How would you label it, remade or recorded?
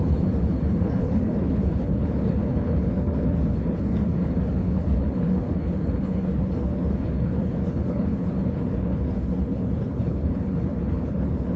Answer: remade